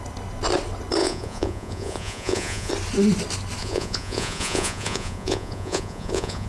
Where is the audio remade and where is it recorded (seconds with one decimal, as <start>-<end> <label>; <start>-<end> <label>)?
0.0-1.0 recorded; 1.0-2.7 remade; 2.7-3.6 recorded; 3.6-6.5 remade